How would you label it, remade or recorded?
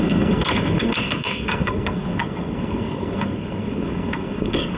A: remade